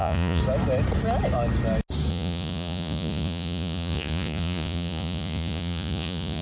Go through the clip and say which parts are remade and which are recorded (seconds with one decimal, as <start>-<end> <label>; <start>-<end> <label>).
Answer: 0.0-0.4 remade; 0.4-2.1 recorded; 2.1-6.4 remade